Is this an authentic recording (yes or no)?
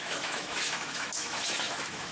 no